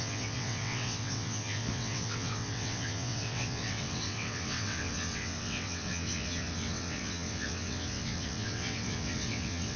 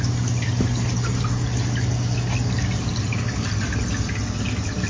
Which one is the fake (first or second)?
first